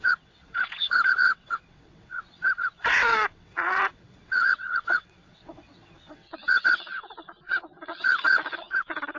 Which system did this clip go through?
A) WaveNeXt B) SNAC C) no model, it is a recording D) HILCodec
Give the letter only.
A